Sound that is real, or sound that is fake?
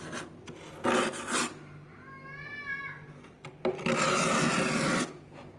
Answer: real